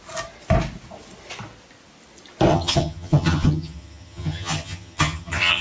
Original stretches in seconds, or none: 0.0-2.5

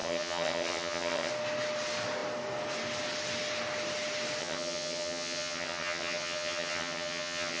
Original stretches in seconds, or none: 1.3-4.4

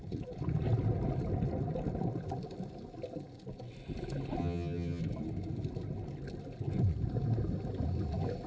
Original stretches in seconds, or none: 0.0-4.4; 5.0-8.5

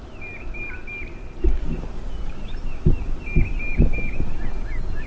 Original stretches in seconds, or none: 0.0-5.1

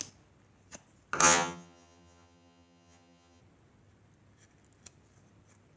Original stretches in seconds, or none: 0.0-1.2; 3.4-5.8